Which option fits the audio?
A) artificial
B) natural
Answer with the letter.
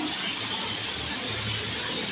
B